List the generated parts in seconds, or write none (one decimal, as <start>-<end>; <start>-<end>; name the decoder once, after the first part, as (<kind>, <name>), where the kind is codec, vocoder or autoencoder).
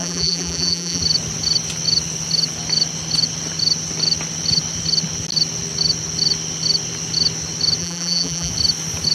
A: 0.0-1.0 (vocoder, BigVGAN v2); 7.8-8.5